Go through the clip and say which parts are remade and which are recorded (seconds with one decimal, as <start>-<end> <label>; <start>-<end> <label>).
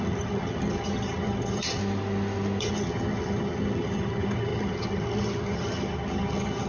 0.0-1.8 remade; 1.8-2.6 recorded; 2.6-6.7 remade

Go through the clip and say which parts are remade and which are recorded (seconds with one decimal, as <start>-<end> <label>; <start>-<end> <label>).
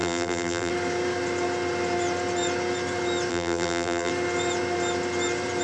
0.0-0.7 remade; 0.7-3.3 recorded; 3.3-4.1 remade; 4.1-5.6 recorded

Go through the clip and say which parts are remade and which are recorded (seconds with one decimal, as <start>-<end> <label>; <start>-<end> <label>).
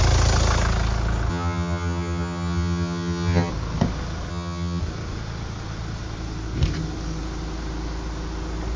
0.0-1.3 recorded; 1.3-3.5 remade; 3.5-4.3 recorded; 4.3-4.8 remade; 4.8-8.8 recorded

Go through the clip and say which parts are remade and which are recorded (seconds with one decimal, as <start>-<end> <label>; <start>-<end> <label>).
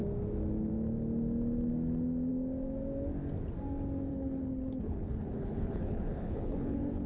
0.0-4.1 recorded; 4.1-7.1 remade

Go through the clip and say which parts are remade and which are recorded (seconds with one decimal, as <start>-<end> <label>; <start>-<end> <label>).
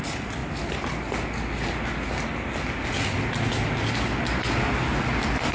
0.0-5.5 recorded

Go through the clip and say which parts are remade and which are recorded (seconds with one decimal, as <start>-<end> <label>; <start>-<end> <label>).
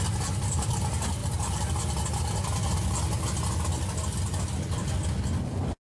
0.0-5.9 recorded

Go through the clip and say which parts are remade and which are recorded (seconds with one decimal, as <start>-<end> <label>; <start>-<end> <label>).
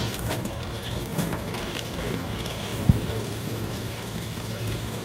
0.0-5.0 remade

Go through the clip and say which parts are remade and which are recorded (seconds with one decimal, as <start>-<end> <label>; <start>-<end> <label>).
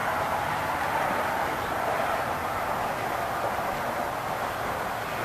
0.0-5.2 recorded